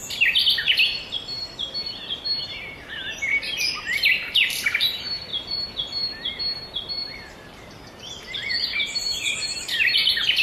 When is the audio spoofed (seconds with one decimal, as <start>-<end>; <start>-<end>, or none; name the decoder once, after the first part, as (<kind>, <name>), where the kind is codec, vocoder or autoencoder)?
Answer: 2.6-5.3 (vocoder, BigVGAN v2); 6.9-10.4